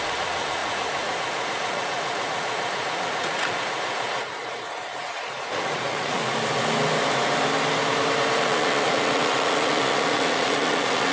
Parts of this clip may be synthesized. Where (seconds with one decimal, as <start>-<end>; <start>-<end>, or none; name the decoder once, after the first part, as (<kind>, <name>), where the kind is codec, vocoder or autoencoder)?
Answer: 0.0-6.2 (vocoder, Vocos); 8.4-11.1